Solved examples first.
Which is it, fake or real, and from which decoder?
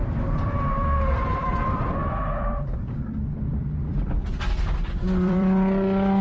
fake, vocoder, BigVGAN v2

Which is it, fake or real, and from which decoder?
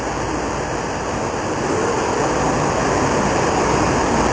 real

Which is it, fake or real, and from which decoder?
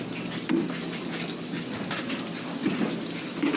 real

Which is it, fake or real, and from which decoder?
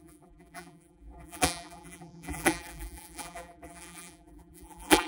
fake, vocoder, BigVGAN v2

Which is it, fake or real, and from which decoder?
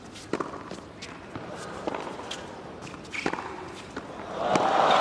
real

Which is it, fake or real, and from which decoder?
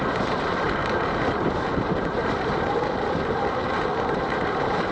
fake, vocoder, BigVGAN v2